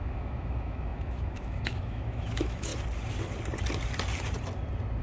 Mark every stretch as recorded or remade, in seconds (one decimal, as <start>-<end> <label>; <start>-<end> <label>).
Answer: 0.0-2.7 remade; 2.7-5.0 recorded